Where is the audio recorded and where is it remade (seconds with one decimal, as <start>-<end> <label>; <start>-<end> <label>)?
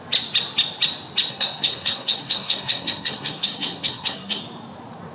0.0-1.3 recorded; 1.3-4.4 remade; 4.4-5.1 recorded